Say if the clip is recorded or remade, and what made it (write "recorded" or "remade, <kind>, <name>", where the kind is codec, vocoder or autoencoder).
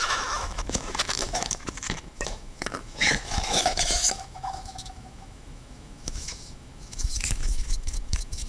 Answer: remade, autoencoder, DAC-VAE